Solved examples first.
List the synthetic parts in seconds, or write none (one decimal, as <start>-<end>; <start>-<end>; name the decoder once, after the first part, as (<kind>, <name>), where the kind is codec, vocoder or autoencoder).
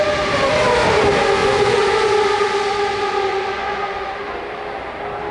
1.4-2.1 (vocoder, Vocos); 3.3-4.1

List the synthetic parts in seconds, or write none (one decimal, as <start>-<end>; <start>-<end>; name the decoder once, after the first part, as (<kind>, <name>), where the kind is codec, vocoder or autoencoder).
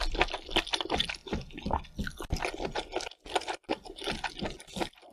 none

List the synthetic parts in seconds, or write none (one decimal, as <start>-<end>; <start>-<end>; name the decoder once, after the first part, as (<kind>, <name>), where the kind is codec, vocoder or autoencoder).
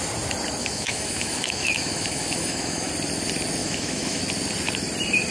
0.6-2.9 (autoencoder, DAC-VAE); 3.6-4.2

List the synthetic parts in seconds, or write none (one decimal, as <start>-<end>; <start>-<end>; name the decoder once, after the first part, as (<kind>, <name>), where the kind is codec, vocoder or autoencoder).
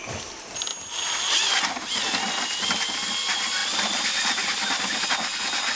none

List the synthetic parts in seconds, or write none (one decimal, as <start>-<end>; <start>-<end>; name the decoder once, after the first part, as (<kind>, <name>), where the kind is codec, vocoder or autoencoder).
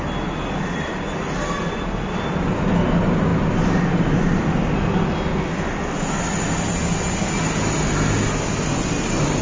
none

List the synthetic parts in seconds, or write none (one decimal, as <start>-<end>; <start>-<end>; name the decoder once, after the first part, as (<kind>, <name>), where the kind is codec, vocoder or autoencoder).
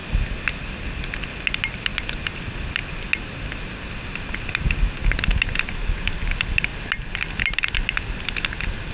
none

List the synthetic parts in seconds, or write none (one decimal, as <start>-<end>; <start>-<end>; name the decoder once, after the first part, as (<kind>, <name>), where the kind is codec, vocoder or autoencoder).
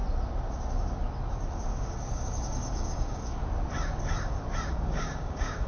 1.8-3.4 (codec, DAC); 4.7-5.7